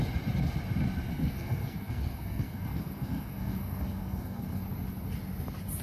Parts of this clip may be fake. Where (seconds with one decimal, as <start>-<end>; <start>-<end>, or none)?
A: 1.1-4.6